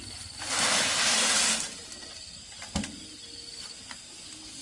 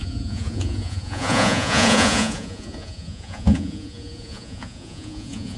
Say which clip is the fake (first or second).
second